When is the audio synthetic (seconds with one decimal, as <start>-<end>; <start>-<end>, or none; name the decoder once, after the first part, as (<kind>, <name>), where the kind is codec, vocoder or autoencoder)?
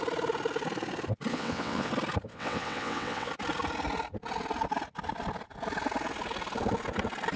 1.3-1.9 (vocoder, WaveNeXt); 2.3-3.3